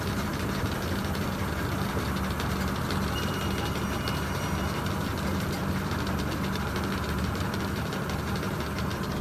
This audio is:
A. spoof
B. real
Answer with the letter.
B